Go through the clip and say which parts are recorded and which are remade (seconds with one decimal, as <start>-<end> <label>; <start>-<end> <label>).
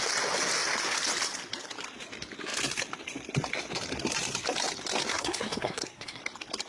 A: 0.0-5.1 recorded; 5.1-6.2 remade; 6.2-6.7 recorded